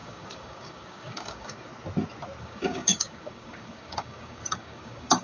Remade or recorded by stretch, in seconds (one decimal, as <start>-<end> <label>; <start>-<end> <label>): 0.0-1.7 remade; 1.7-2.4 recorded; 2.4-5.2 remade